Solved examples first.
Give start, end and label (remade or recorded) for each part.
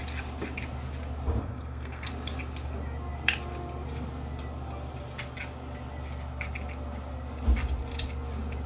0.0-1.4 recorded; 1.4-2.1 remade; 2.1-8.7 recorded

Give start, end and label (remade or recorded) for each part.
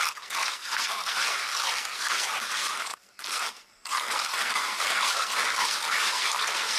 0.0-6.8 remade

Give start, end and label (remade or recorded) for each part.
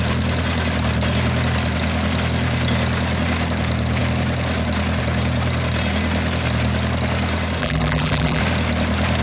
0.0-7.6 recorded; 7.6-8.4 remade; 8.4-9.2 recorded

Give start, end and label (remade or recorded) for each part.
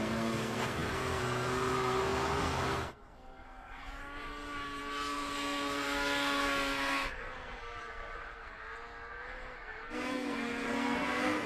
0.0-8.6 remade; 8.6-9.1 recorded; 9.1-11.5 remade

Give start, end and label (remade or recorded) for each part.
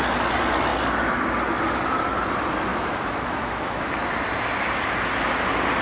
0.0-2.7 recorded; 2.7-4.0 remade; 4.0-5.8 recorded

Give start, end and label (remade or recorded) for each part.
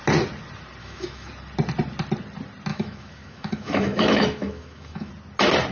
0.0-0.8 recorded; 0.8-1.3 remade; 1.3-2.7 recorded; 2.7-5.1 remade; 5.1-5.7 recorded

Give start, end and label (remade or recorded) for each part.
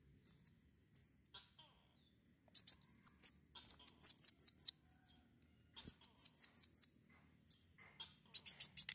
0.0-8.9 recorded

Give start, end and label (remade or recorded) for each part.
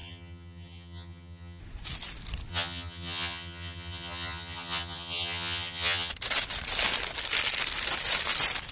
0.0-1.6 remade; 1.6-2.5 recorded; 2.5-6.1 remade; 6.1-8.7 recorded